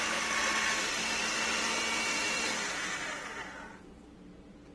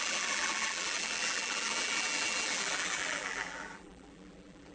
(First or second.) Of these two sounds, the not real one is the second